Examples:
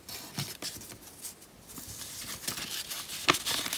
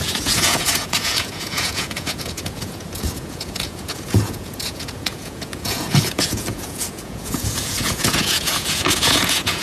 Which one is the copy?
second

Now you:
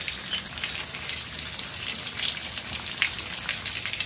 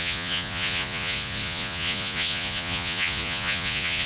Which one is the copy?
second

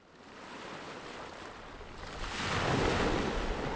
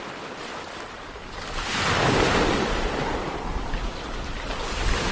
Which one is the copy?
second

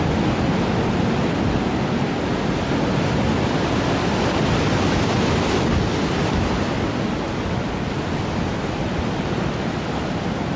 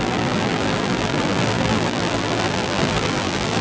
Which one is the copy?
second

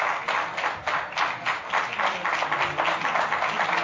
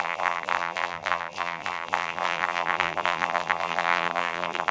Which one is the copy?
second